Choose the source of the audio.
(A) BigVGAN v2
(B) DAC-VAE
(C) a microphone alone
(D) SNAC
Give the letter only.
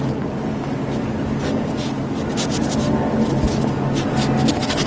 C